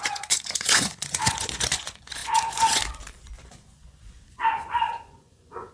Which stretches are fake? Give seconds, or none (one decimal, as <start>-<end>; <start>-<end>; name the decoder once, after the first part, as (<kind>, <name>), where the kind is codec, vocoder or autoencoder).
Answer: 0.0-5.7 (vocoder, Vocos)

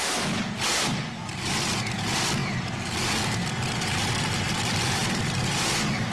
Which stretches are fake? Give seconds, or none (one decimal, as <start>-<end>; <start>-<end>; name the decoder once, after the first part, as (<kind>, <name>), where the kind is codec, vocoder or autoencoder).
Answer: 1.3-1.9 (vocoder, BigVGAN v2); 5.0-5.5

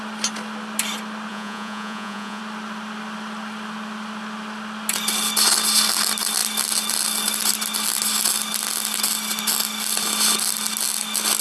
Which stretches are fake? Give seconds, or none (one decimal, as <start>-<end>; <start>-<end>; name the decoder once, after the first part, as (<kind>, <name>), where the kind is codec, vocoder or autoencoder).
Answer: 1.3-2.4 (vocoder, Vocos)

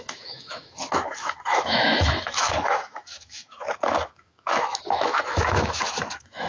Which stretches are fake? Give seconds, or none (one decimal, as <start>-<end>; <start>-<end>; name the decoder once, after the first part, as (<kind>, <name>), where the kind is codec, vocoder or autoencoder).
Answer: 0.0-6.5 (autoencoder, DAC-VAE)

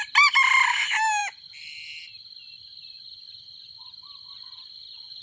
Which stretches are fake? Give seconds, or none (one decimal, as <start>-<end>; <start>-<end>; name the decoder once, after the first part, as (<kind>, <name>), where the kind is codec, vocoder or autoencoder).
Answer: none

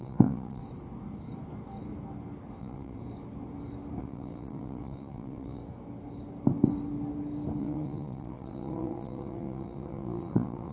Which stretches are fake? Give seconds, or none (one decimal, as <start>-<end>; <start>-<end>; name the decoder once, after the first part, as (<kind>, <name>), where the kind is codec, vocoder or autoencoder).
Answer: 0.0-0.6 (vocoder, WaveNeXt); 2.6-3.0; 4.0-5.6; 7.6-10.7